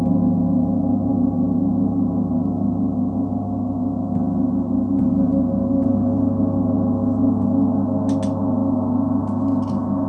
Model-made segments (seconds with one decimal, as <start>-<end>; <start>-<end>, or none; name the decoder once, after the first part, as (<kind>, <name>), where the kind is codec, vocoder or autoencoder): 8.6-9.2 (autoencoder, DAC-VAE)